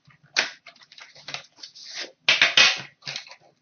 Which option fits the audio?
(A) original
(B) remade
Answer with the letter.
A